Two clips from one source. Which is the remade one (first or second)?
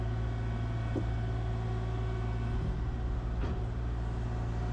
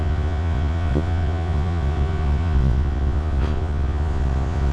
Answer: second